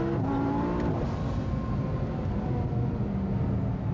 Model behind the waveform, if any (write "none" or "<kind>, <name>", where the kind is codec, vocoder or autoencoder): none